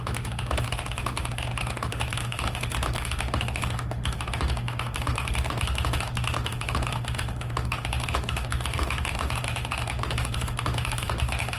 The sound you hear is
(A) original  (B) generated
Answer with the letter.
B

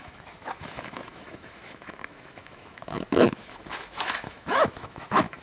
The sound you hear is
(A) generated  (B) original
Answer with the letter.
A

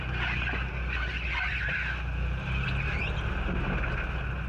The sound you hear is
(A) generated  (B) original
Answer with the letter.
B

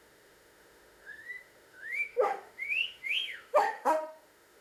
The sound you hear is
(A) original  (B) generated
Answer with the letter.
B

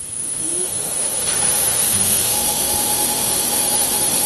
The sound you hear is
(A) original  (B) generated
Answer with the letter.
B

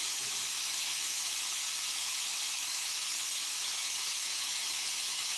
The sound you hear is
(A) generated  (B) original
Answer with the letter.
A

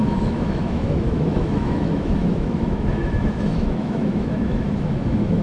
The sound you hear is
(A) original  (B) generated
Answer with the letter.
B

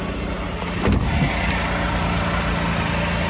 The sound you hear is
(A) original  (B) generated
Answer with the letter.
A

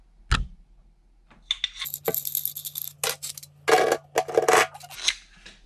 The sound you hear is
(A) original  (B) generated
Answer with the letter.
A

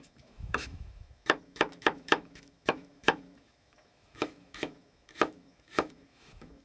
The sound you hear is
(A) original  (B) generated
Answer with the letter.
B